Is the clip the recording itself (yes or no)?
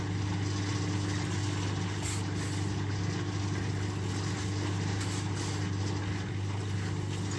yes